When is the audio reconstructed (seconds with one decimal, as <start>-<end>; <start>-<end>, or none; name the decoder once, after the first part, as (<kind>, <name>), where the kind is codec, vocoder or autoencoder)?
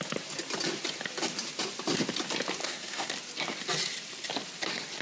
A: 2.6-3.1 (codec, SNAC)